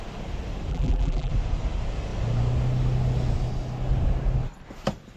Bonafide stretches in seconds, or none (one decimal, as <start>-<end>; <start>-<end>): 0.0-0.7; 1.3-5.2